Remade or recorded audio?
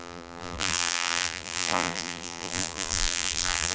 remade